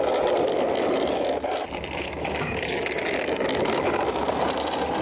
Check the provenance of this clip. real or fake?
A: fake